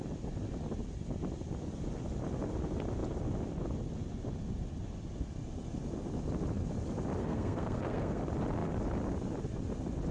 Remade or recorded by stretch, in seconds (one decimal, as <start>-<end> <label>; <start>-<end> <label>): 0.0-7.2 recorded; 7.2-8.2 remade; 8.2-10.1 recorded